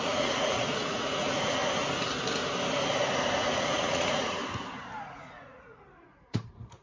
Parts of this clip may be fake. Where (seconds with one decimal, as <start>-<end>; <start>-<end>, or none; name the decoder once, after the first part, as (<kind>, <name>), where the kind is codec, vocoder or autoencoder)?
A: 0.0-1.6 (vocoder, Vocos); 3.4-4.4; 5.0-6.8